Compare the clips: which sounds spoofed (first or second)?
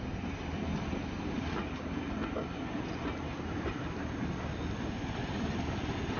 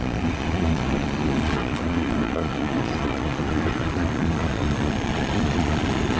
second